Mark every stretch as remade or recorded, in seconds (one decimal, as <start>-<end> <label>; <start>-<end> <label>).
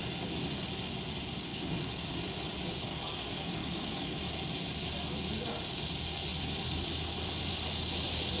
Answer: 0.0-1.5 recorded; 1.5-2.1 remade; 2.1-2.9 recorded; 2.9-4.2 remade; 4.2-8.4 recorded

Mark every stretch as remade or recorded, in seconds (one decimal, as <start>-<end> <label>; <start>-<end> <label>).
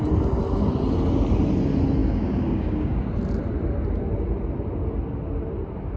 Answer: 0.0-2.0 recorded; 2.0-3.1 remade; 3.1-6.0 recorded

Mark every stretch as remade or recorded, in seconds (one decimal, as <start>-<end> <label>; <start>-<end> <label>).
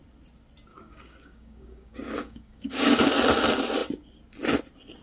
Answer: 0.0-0.7 recorded; 0.7-3.1 remade; 3.1-5.0 recorded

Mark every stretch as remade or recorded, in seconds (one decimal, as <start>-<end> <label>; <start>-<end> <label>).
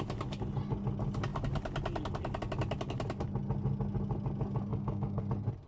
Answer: 0.0-4.7 recorded; 4.7-5.2 remade; 5.2-5.7 recorded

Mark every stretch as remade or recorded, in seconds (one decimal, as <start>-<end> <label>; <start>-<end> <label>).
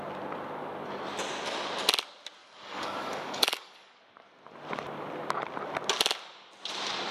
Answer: 0.0-2.4 recorded; 2.4-4.0 remade; 4.0-7.1 recorded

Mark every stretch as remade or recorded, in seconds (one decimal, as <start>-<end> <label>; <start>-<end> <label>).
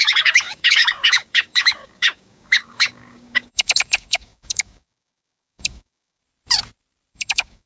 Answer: 0.0-6.2 remade; 6.2-7.1 recorded; 7.1-7.7 remade